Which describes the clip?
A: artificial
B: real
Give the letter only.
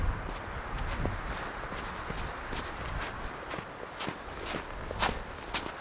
B